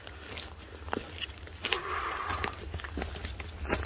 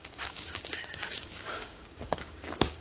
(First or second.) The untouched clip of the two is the first